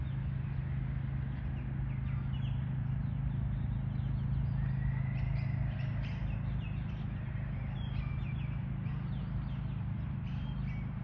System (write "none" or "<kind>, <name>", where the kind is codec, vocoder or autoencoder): none